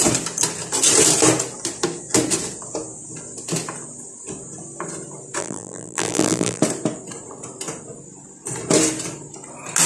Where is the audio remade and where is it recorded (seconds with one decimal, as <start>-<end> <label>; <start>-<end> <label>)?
0.0-5.4 recorded; 5.4-6.6 remade; 6.6-9.9 recorded